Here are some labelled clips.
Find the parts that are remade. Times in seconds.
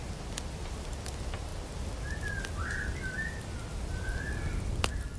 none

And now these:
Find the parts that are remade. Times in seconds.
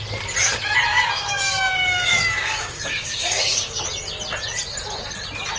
0.9-3.8 (codec, DAC)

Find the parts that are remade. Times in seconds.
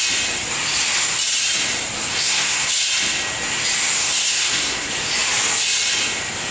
2.1-2.7 (codec, SNAC); 4.0-4.9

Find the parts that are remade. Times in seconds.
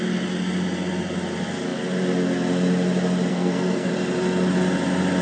3.3-3.9 (codec, SNAC)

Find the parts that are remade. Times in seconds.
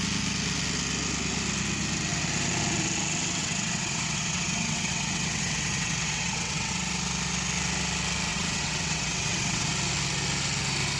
3.4-6.7 (vocoder, WaveNeXt); 8.3-9.7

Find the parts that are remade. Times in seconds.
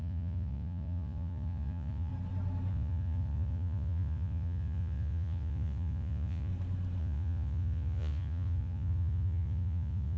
0.0-2.1 (vocoder, Vocos); 2.7-6.5; 7.0-10.2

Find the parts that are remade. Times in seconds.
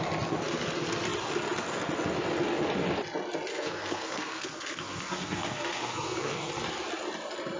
3.5-6.5 (codec, SNAC)